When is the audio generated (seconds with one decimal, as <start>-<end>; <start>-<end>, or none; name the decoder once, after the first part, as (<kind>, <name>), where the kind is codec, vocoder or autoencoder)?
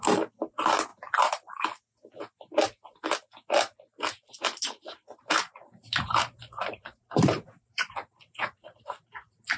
0.0-0.9 (vocoder, BigVGAN v2); 4.3-9.6